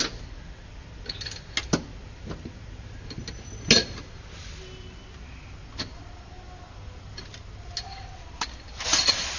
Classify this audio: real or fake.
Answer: real